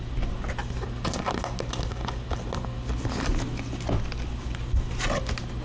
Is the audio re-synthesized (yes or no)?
no